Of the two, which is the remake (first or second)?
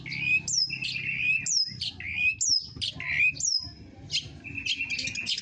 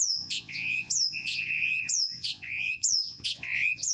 second